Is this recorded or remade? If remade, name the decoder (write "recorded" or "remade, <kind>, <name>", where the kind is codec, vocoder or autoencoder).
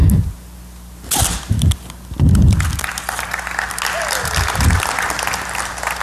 recorded